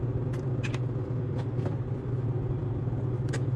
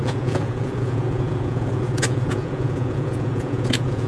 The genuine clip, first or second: first